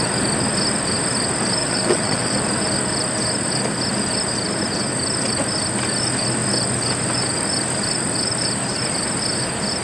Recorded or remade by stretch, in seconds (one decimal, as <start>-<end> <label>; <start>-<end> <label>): 0.0-1.6 recorded; 1.6-2.3 remade; 2.3-9.8 recorded